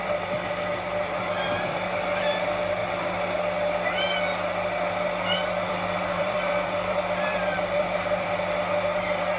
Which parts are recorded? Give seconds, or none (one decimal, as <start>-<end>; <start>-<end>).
2.8-5.7